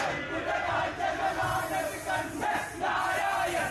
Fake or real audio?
real